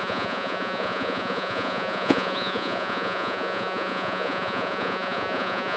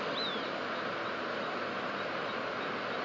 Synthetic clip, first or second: first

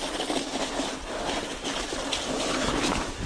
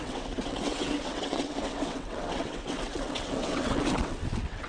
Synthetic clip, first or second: second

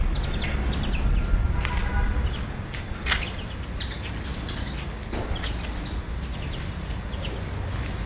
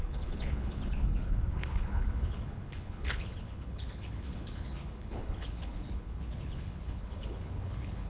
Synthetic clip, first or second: second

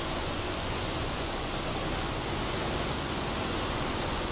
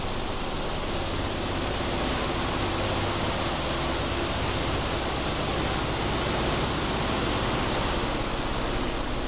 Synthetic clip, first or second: first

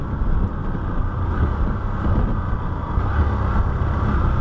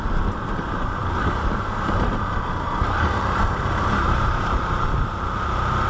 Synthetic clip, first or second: second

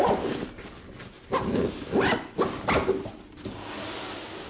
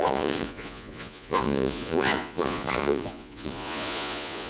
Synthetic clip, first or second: second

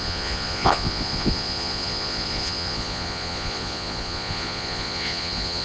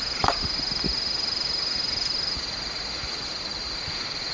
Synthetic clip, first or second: first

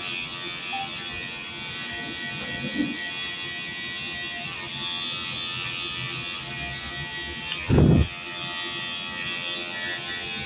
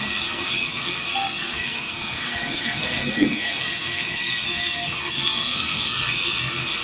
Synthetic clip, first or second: second